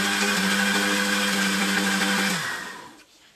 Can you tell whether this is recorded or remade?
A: recorded